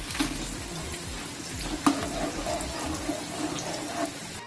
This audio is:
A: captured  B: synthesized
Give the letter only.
A